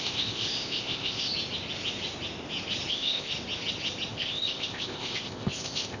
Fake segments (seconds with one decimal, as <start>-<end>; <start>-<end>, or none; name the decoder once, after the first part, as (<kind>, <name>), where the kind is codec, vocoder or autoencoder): 0.0-1.3 (codec, ZipCodec); 2.9-3.3; 4.1-6.0